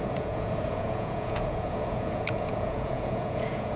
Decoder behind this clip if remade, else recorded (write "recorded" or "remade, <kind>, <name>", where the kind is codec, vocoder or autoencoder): remade, vocoder, Vocos